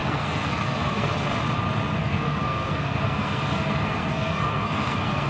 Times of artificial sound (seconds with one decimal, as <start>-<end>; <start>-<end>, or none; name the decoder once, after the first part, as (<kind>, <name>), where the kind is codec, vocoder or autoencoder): 0.0-1.1 (codec, SNAC); 2.0-5.3